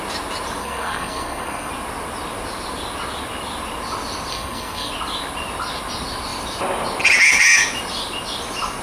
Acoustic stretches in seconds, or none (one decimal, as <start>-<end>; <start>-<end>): 0.0-0.6; 1.7-4.3; 4.9-8.8